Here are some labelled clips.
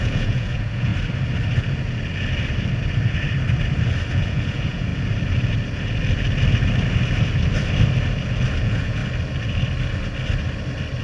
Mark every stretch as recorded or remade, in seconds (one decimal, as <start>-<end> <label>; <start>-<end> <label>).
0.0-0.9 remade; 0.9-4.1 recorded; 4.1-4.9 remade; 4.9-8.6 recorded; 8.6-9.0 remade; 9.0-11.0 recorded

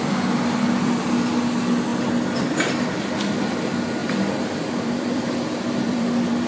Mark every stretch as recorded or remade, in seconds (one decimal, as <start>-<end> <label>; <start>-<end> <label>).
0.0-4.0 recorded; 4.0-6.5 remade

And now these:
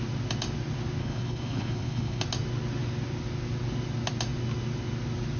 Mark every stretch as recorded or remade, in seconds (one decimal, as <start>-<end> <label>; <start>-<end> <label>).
0.0-1.0 recorded; 1.0-2.2 remade; 2.2-5.4 recorded

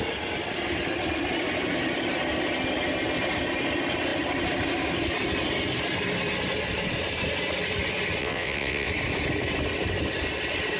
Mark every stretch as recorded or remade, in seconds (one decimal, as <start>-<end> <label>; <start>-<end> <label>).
0.0-8.2 recorded; 8.2-8.9 remade; 8.9-10.8 recorded

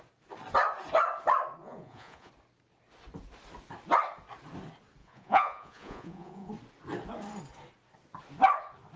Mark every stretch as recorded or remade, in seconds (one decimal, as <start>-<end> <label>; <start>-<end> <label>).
0.0-1.6 recorded; 1.6-2.3 remade; 2.3-5.0 recorded; 5.0-6.5 remade; 6.5-9.0 recorded

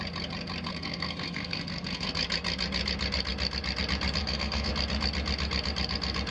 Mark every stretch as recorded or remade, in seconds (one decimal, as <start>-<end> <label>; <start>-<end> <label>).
0.0-0.7 recorded; 0.7-2.1 remade; 2.1-4.2 recorded; 4.2-4.7 remade; 4.7-6.3 recorded